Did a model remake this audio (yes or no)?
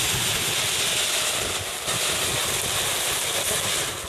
no